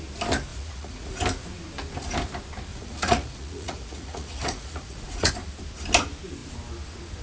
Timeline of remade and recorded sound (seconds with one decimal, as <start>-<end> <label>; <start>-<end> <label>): 0.0-0.5 recorded; 0.5-1.2 remade; 1.2-2.7 recorded; 2.7-5.3 remade; 5.3-7.2 recorded